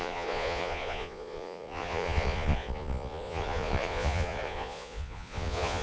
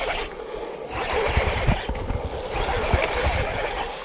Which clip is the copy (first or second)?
first